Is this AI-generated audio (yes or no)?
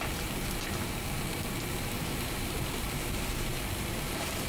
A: yes